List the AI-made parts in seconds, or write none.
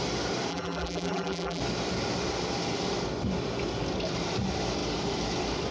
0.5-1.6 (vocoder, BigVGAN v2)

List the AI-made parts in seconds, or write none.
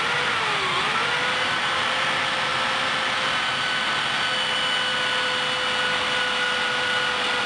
none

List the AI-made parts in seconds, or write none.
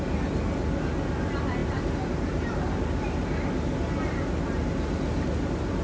1.6-2.5 (vocoder, BigVGAN v2)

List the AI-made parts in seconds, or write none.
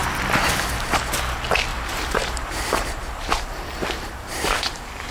1.7-5.1 (vocoder, BigVGAN v2)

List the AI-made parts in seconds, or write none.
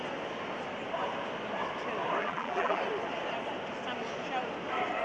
2.2-2.8 (vocoder, BigVGAN v2)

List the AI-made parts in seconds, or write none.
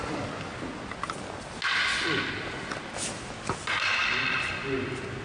4.0-4.5 (vocoder, BigVGAN v2)